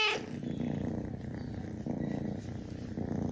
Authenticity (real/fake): real